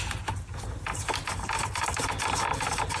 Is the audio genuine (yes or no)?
yes